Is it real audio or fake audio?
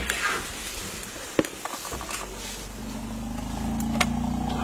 real